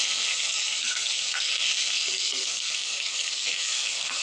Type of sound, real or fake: fake